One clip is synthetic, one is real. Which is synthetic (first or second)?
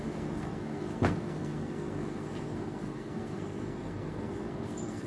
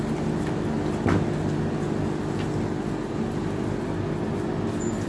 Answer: first